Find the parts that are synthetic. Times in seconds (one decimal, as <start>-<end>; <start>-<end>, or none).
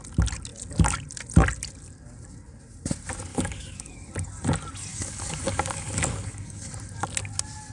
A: 3.3-3.9; 4.9-6.7